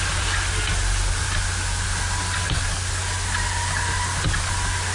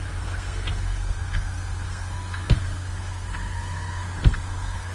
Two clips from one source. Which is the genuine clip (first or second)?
first